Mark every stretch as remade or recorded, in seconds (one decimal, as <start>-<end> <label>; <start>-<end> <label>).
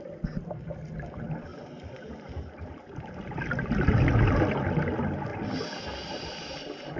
0.0-1.5 recorded; 1.5-3.5 remade; 3.5-7.0 recorded